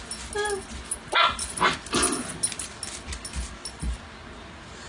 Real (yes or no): yes